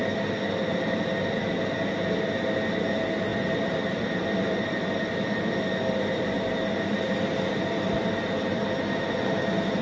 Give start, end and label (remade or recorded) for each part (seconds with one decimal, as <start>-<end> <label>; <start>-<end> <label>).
0.0-3.3 recorded; 3.3-8.2 remade; 8.2-9.8 recorded